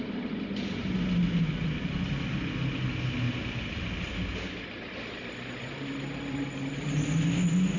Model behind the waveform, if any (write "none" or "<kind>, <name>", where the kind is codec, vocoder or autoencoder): none